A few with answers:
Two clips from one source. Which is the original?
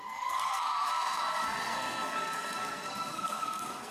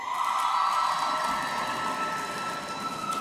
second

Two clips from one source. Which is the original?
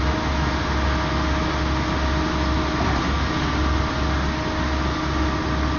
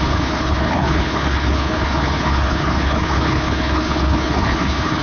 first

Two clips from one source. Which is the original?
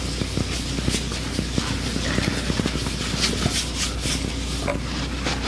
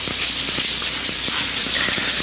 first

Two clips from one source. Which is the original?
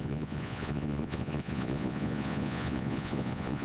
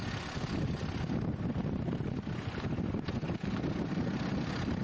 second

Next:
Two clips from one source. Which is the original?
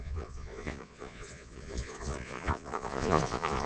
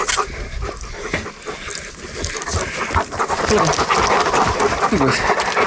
second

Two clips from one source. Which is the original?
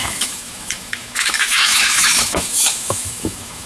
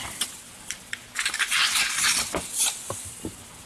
second